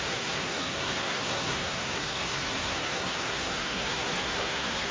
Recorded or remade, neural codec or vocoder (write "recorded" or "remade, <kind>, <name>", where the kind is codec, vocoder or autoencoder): remade, codec, SNAC